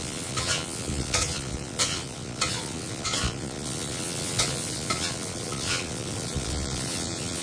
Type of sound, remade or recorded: remade